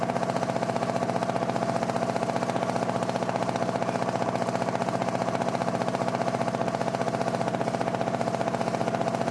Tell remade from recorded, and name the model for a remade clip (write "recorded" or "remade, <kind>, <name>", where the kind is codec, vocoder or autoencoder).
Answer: recorded